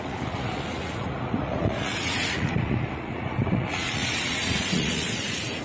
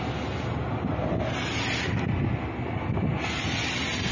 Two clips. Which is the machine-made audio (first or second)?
first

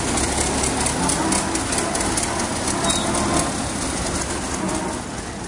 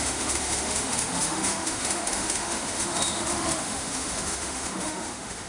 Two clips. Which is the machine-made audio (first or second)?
second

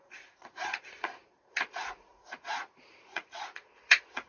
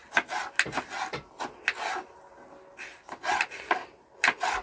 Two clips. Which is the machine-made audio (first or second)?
first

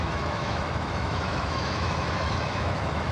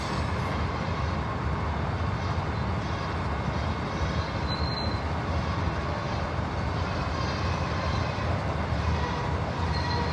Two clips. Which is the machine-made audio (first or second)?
first